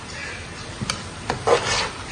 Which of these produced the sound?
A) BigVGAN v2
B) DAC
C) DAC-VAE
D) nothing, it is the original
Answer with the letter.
D